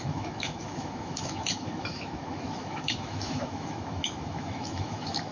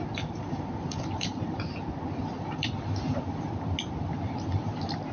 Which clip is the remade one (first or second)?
first